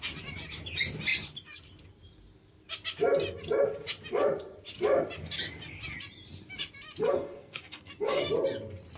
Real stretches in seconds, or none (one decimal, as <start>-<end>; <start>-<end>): 0.0-7.0; 8.3-9.0